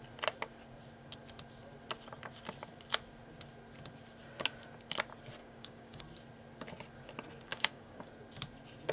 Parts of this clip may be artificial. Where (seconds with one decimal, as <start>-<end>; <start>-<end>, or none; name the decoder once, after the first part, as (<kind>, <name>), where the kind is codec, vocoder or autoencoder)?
5.4-6.0 (codec, DAC); 7.5-8.1